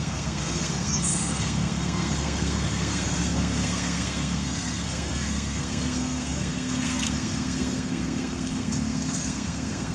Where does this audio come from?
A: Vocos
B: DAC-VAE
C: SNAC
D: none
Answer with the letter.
C